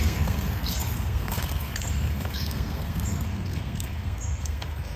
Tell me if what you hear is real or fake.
fake